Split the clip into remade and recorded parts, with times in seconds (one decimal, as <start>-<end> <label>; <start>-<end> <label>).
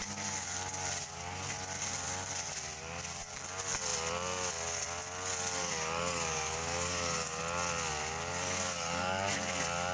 0.0-5.6 recorded; 5.6-7.4 remade; 7.4-8.3 recorded; 8.3-9.3 remade; 9.3-9.9 recorded